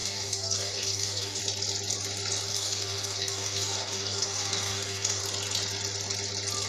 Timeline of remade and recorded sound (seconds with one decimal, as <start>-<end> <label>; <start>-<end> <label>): 0.0-1.4 remade; 1.4-2.5 recorded; 2.5-5.2 remade; 5.2-6.7 recorded